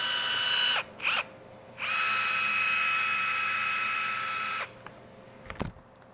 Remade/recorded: recorded